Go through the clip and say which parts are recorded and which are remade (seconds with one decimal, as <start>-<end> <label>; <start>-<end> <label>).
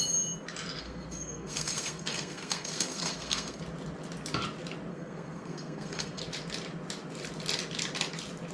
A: 0.0-0.8 recorded; 0.8-3.6 remade; 3.6-4.9 recorded; 4.9-6.2 remade; 6.2-8.5 recorded